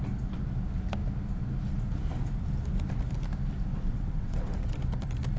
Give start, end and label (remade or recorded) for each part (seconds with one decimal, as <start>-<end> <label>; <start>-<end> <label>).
0.0-3.7 recorded; 3.7-4.7 remade; 4.7-5.4 recorded